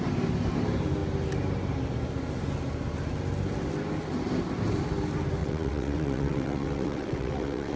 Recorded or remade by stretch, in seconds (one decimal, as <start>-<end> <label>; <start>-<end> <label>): 0.0-5.4 recorded; 5.4-7.8 remade